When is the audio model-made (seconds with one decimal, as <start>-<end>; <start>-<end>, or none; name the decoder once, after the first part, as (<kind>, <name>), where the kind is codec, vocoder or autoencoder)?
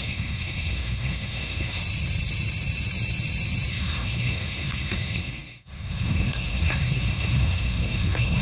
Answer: 0.0-1.8 (codec, SNAC); 3.7-8.4